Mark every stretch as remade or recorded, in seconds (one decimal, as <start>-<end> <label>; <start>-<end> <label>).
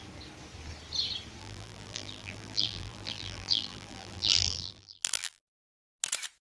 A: 0.0-1.4 recorded; 1.4-5.4 remade; 5.4-6.6 recorded